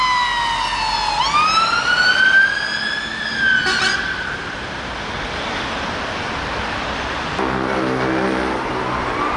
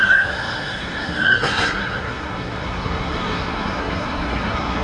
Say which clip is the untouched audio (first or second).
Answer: first